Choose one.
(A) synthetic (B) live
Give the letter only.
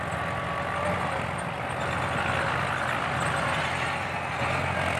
B